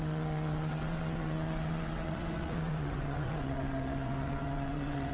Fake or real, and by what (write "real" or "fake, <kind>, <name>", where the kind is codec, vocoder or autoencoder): fake, vocoder, WaveNeXt